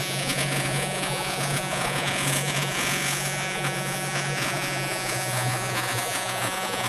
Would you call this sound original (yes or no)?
no